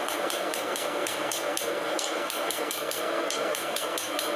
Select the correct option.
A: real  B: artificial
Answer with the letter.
B